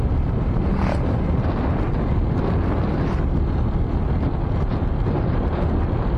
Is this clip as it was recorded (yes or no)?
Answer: yes